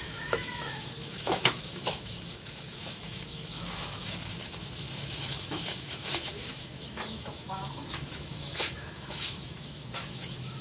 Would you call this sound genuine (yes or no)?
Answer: no